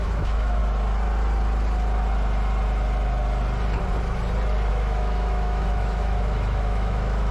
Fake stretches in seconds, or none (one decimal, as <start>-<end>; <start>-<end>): 0.0-0.6; 4.7-7.3